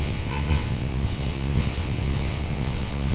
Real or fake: fake